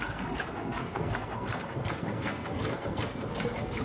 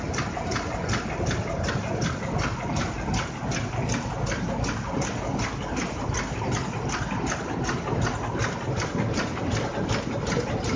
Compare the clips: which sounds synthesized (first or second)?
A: first